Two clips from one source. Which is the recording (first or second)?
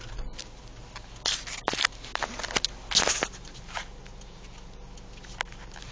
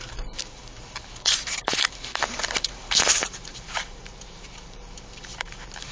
first